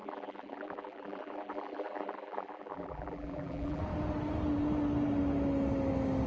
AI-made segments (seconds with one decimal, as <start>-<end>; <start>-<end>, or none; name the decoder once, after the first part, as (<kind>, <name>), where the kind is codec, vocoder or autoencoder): 0.0-3.8 (vocoder, BigVGAN v2)